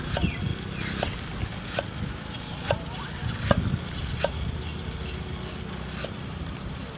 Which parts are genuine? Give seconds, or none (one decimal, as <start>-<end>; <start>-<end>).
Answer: 0.0-7.0